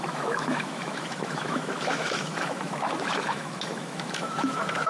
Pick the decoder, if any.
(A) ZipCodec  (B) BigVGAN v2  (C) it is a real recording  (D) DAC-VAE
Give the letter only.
D